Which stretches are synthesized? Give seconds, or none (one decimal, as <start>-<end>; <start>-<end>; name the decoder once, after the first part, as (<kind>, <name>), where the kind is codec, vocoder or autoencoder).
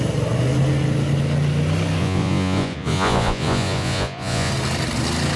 2.0-4.5 (vocoder, Vocos)